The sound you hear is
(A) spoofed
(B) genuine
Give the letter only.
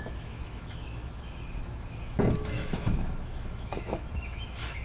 A